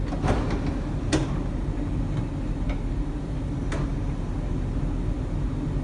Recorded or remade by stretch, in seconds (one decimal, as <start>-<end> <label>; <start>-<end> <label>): 0.0-5.8 recorded